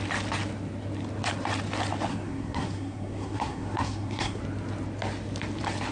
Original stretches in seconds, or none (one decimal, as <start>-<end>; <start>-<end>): 0.0-2.1; 4.4-5.9

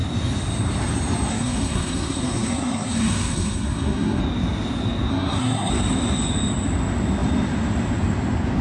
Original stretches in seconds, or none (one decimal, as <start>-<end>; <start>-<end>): 0.0-1.3; 4.2-5.1; 5.7-8.6

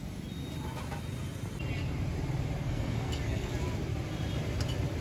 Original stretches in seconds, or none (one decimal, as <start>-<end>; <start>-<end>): 0.0-2.6; 3.5-5.0

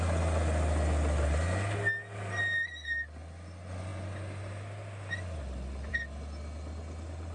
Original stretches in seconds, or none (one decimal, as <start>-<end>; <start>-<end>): 0.0-7.3